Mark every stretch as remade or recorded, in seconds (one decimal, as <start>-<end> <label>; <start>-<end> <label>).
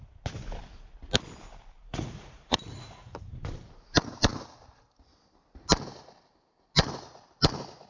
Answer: 0.0-1.9 recorded; 1.9-3.2 remade; 3.2-7.9 recorded